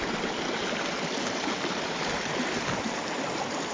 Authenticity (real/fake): real